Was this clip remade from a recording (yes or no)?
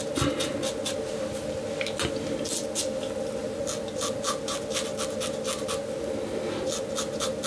no